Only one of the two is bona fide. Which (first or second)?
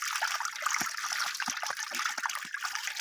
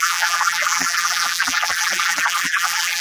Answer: first